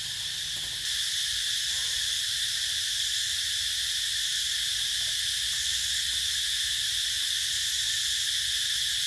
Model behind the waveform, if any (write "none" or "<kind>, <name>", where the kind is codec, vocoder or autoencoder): none